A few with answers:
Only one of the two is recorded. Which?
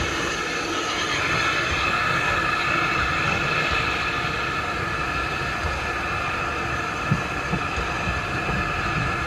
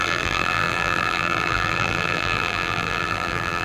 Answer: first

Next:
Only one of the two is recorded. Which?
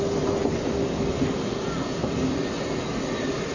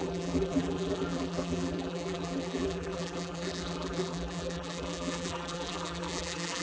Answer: first